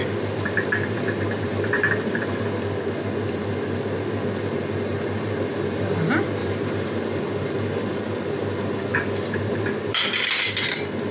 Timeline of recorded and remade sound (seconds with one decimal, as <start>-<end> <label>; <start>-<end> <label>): 0.0-2.4 remade; 2.4-6.4 recorded; 6.4-7.2 remade; 7.2-11.1 recorded